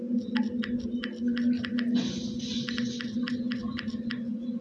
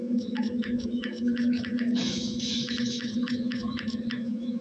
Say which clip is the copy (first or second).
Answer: second